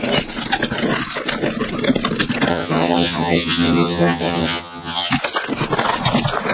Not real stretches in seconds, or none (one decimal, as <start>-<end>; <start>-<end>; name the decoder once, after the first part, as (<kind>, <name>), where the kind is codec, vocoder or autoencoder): 2.5-5.1 (vocoder, HiFi-GAN)

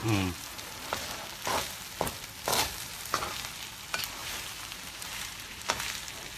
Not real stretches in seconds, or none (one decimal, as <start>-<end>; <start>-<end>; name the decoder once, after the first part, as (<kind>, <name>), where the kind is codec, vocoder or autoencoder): 0.0-1.3 (vocoder, BigVGAN v2); 4.2-5.7

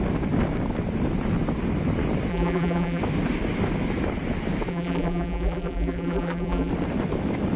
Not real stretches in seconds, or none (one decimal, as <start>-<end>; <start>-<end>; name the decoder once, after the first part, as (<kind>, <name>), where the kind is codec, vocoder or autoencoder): 2.3-3.0 (vocoder, BigVGAN v2); 4.7-6.7

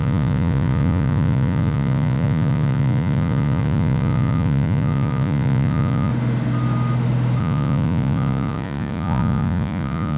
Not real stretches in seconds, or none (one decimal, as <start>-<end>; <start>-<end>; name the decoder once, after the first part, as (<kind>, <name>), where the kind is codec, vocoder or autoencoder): 0.0-6.1 (vocoder, Vocos); 7.4-10.2

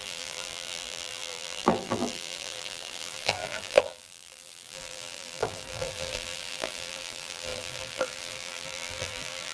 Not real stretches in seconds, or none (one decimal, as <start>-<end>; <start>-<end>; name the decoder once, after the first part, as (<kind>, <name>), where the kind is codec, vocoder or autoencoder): 0.0-9.5 (vocoder, BigVGAN v2)

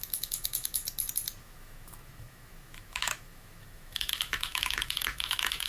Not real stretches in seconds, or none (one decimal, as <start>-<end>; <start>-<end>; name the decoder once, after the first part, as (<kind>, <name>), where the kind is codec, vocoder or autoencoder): 0.0-0.8 (autoencoder, DAC-VAE); 1.4-5.7

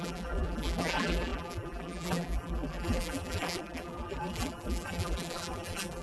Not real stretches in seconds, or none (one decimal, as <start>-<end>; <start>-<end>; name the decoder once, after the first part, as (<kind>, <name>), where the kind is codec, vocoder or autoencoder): 0.0-6.0 (vocoder, BigVGAN v2)

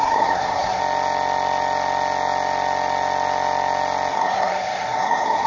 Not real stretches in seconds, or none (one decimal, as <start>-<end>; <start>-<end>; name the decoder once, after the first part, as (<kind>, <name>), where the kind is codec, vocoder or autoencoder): 0.0-0.8 (codec, SNAC); 4.1-5.5